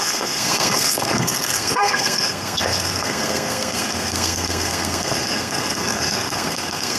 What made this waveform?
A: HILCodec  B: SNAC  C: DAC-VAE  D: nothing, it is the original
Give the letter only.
B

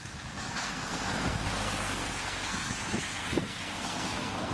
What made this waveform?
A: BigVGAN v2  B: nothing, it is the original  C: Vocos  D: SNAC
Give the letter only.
D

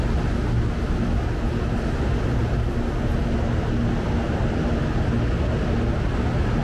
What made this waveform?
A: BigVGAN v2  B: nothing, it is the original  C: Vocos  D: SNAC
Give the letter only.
B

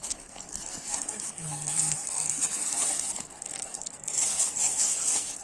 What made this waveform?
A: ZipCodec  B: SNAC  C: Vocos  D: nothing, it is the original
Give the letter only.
B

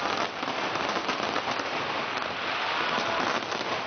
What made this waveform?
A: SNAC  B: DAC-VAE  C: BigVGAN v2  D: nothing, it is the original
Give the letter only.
D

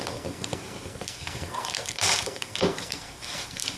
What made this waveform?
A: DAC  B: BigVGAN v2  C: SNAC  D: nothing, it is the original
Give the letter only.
C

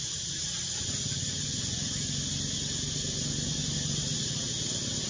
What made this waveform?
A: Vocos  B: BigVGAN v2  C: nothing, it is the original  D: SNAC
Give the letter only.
C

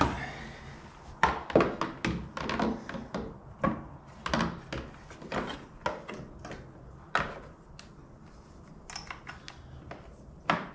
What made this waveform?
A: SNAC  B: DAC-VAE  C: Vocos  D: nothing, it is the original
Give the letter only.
D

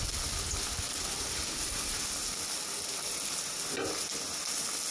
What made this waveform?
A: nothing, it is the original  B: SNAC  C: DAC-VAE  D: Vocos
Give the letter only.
A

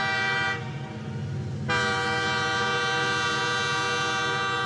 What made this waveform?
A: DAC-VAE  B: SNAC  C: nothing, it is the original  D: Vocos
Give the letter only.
C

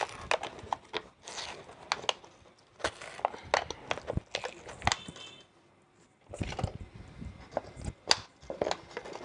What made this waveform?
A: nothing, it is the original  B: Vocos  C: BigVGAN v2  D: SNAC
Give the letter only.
A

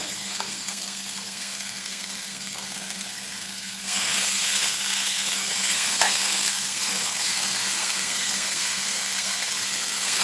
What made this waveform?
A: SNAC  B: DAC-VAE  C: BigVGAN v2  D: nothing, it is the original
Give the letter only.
A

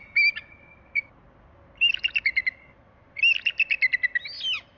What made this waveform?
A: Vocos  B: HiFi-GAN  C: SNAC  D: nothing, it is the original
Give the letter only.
D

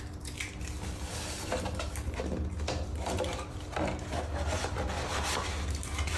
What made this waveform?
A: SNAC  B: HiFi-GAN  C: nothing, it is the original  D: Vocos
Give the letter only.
C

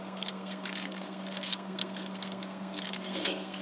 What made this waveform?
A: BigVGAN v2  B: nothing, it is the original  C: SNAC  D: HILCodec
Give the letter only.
C